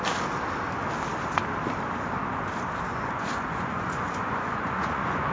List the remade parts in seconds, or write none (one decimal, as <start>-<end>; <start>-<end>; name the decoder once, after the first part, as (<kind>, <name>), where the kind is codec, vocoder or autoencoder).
2.9-5.3 (vocoder, Vocos)